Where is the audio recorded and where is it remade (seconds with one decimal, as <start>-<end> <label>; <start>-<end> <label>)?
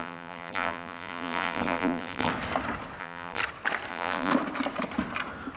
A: 0.0-2.3 remade; 2.3-3.0 recorded; 3.0-3.4 remade; 3.4-3.9 recorded; 3.9-4.3 remade; 4.3-5.6 recorded